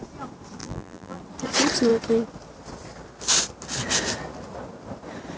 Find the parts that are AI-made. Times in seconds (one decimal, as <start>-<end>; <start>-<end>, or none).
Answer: 0.6-1.2